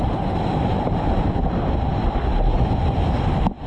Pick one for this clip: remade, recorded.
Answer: recorded